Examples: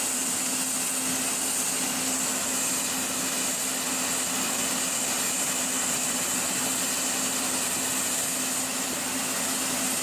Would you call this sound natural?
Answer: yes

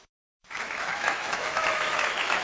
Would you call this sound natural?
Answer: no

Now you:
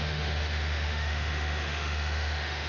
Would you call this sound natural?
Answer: no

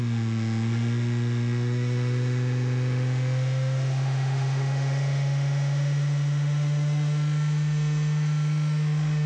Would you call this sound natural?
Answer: no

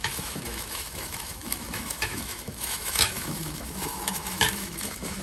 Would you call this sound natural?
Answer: no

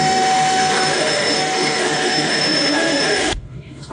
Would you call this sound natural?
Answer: no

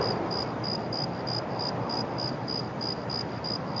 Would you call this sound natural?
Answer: yes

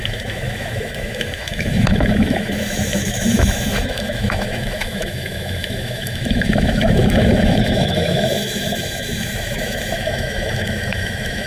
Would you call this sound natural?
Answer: no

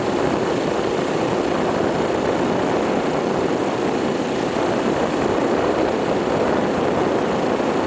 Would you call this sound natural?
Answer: yes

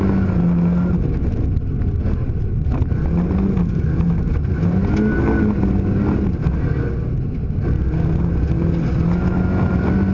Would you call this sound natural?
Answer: yes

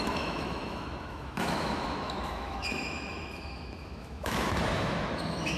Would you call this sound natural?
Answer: no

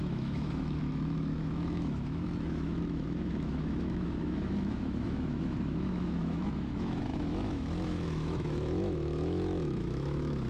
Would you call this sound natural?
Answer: no